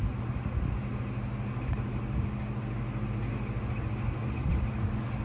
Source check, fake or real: real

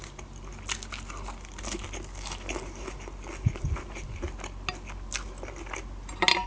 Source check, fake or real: real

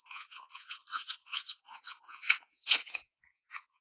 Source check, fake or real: fake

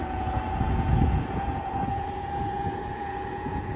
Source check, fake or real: fake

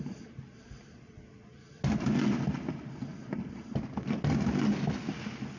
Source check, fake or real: real